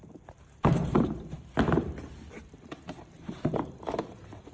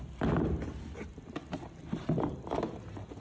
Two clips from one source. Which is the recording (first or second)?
second